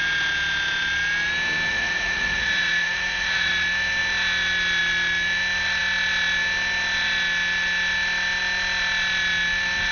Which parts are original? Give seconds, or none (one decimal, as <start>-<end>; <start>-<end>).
0.0-1.7; 3.5-9.9